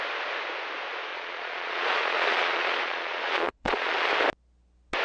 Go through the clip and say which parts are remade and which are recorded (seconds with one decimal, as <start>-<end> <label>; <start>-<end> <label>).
0.0-1.1 recorded; 1.1-4.1 remade; 4.1-5.0 recorded